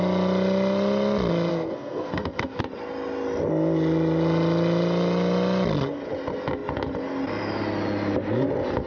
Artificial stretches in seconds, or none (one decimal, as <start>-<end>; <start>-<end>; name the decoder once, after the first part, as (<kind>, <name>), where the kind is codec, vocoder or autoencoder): 1.5-2.6 (codec, SNAC)